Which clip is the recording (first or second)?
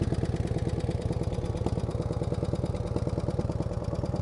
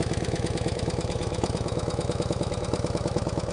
first